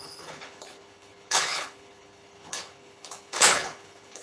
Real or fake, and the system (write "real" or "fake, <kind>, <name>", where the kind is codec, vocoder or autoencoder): fake, codec, HILCodec